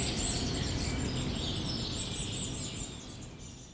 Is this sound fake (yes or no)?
no